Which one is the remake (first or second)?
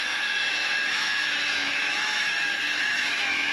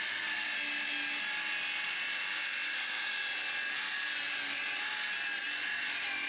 first